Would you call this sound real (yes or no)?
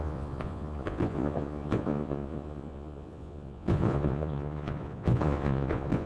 no